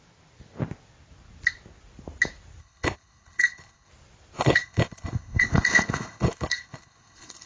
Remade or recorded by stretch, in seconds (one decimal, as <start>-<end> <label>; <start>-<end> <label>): 0.0-2.6 recorded; 2.6-3.9 remade; 3.9-4.4 recorded; 4.4-7.5 remade